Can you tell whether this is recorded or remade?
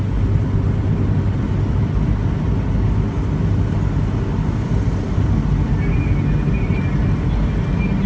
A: recorded